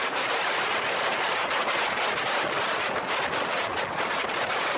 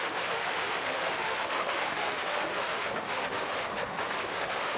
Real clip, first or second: first